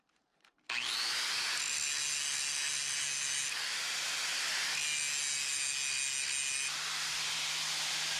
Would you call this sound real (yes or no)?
yes